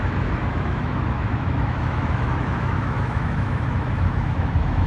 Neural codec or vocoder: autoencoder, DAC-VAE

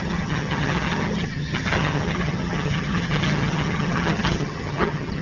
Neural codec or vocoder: vocoder, HiFi-GAN